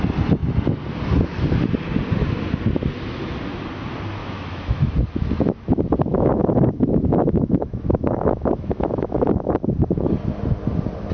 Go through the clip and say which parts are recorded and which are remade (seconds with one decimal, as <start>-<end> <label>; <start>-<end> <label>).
0.0-4.2 recorded; 4.2-4.9 remade; 4.9-6.1 recorded; 6.1-9.5 remade; 9.5-11.1 recorded